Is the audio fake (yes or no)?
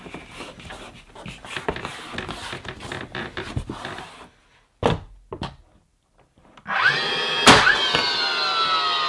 no